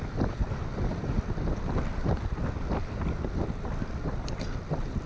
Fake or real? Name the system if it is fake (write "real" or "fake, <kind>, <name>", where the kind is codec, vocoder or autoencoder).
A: real